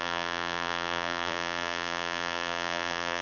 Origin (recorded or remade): remade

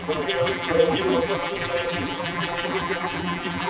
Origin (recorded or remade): remade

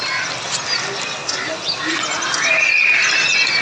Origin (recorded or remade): recorded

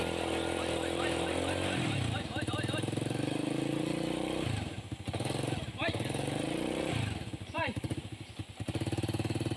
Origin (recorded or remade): remade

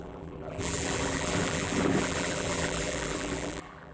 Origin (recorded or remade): remade